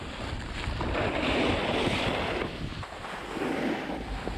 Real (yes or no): yes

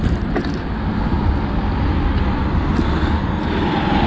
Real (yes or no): yes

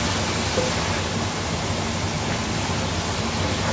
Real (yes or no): yes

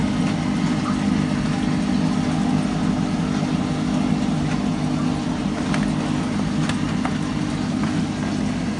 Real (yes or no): yes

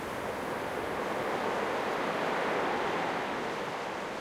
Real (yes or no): yes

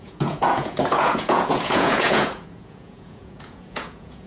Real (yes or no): no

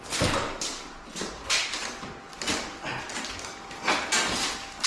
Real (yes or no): yes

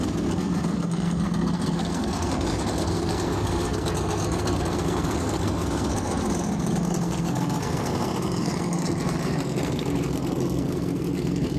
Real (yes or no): no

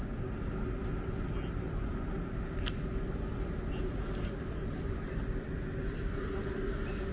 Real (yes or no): yes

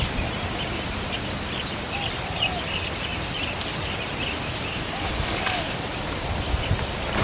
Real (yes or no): yes